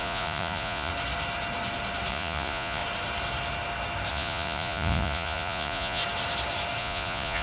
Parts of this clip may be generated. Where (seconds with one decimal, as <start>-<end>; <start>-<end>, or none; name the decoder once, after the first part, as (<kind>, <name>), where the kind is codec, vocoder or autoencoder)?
0.0-0.9 (vocoder, Vocos); 2.1-2.8; 4.1-6.0; 6.8-7.4